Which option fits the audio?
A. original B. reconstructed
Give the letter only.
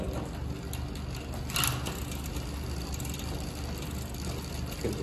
A